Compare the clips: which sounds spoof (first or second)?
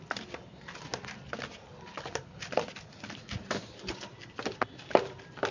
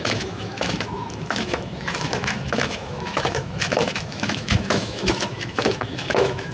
second